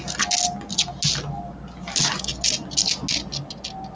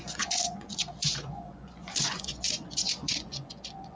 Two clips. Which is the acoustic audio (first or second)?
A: first